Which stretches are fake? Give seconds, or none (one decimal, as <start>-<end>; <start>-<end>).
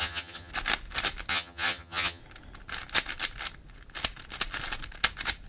0.0-0.5; 1.3-2.2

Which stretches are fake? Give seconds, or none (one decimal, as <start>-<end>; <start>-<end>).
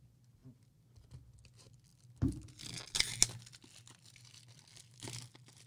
none